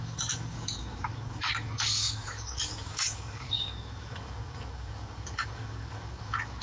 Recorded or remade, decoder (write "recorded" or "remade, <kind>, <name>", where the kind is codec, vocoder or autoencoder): remade, codec, DAC